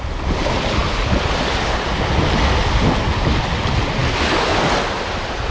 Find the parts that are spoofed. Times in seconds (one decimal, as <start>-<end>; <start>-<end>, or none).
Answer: none